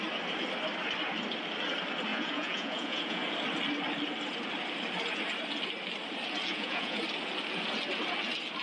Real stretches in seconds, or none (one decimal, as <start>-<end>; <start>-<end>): 0.0-2.1; 3.3-6.5; 7.0-8.6